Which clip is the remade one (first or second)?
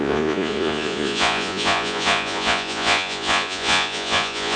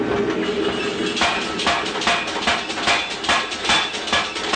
first